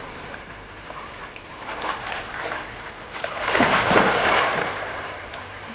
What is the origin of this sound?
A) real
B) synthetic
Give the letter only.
B